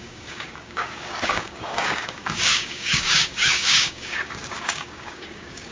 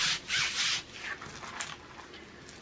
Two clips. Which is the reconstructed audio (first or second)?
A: first